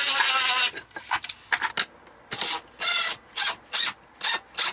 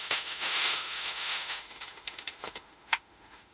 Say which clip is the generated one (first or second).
second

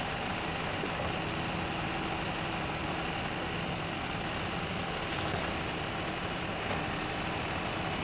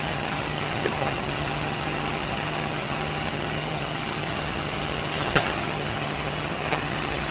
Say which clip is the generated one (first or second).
second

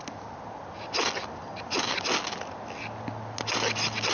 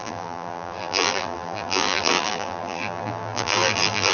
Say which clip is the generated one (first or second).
second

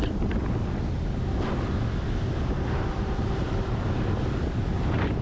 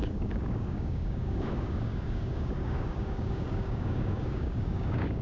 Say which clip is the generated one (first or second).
second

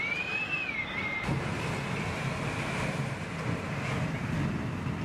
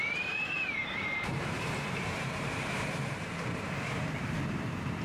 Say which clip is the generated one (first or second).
second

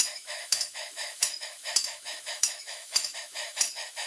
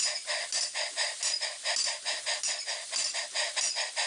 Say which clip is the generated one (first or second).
first